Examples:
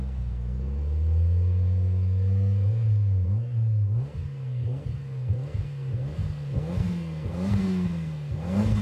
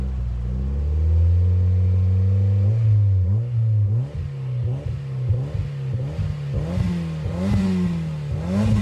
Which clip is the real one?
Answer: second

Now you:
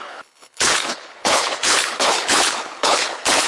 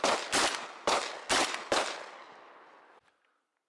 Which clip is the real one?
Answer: second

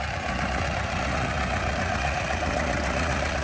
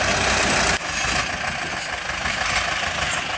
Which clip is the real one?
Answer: second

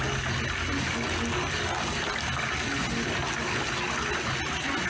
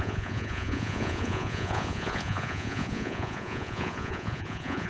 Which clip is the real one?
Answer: first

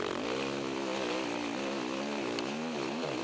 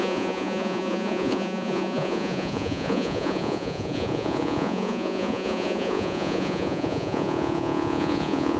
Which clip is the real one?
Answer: first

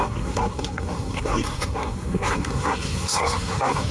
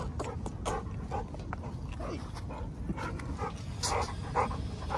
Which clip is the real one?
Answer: second